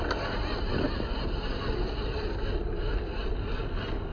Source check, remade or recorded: recorded